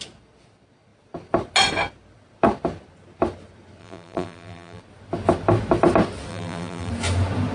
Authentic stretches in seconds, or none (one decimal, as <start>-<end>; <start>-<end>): 0.0-3.8; 4.8-6.3; 6.9-7.5